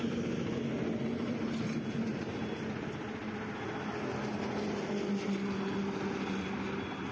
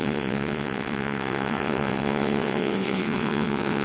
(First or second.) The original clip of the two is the first